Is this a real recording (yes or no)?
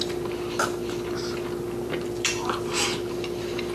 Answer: yes